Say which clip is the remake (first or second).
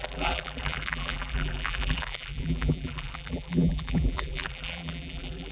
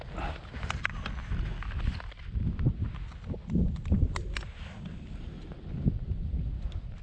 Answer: first